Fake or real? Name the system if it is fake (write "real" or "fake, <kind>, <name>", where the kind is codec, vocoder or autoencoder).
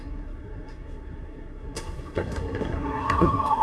fake, codec, SNAC